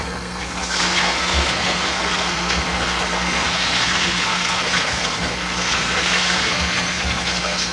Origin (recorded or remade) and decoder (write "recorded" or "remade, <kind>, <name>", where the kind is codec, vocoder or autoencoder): remade, codec, SNAC